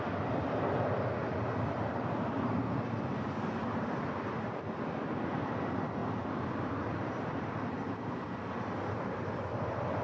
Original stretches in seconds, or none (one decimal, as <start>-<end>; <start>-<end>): 0.0-10.0